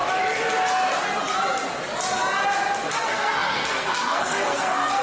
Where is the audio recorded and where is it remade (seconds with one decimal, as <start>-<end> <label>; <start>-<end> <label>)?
0.0-3.0 recorded; 3.0-5.0 remade